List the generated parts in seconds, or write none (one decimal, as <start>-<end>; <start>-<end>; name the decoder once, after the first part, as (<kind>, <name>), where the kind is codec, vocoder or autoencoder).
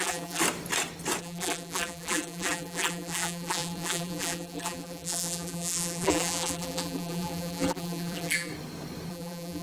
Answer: 0.0-0.4 (vocoder, BigVGAN v2); 1.2-8.5; 9.1-9.6